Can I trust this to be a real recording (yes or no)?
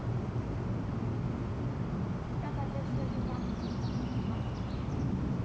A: yes